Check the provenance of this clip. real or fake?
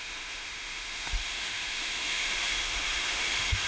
fake